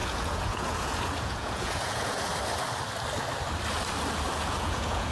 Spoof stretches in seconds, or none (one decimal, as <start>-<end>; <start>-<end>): 0.0-2.3; 4.4-5.1